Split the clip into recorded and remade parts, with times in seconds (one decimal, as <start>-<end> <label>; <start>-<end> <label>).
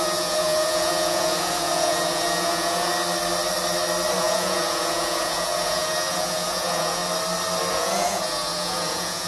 0.0-2.9 remade; 2.9-4.2 recorded; 4.2-7.0 remade; 7.0-7.7 recorded; 7.7-9.3 remade